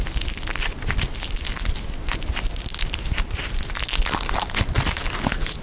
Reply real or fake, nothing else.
real